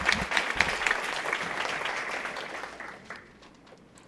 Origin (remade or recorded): remade